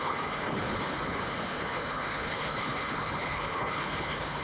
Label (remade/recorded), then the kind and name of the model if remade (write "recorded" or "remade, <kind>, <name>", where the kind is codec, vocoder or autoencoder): remade, codec, HILCodec